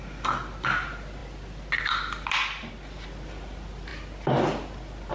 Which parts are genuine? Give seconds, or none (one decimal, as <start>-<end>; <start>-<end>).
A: 0.0-5.1